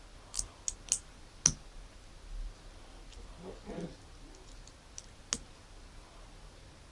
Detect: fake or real real